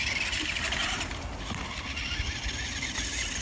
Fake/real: real